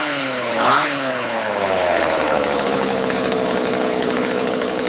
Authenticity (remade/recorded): remade